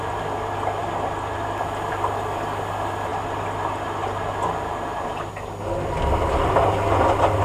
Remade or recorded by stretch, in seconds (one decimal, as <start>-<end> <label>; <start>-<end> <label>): 0.0-7.4 recorded